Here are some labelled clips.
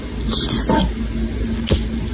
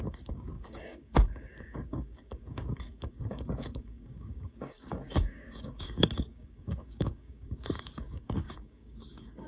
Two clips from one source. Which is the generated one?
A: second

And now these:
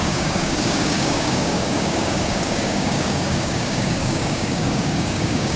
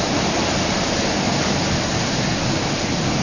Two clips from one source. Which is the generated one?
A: first